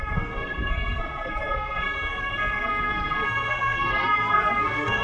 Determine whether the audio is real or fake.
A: fake